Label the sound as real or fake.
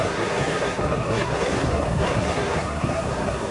fake